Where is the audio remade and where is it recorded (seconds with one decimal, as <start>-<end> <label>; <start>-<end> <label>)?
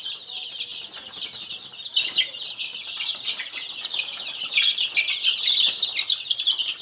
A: 0.0-6.8 recorded